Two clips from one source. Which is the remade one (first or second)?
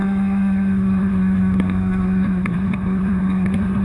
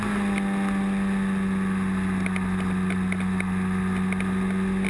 first